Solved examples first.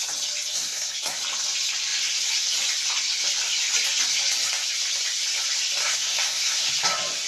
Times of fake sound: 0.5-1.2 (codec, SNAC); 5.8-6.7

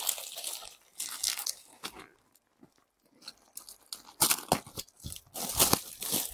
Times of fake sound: 1.3-2.0 (codec, DAC)